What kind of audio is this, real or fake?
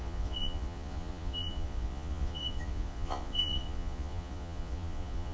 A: fake